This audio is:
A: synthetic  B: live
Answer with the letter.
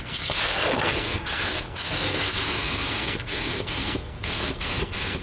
A